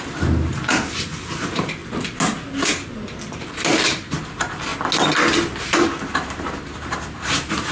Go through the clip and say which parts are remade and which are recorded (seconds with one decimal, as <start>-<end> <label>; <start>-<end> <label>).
0.0-1.8 remade; 1.8-3.3 recorded; 3.3-4.7 remade; 4.7-5.5 recorded; 5.5-7.7 remade